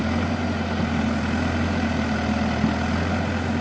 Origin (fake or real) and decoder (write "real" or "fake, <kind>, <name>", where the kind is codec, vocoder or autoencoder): real